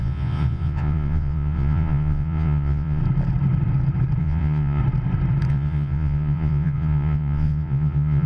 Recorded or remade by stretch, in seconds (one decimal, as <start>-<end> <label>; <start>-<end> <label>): 0.0-3.0 remade; 3.0-4.2 recorded; 4.2-4.8 remade; 4.8-5.5 recorded; 5.5-8.3 remade